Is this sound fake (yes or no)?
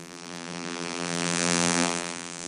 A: yes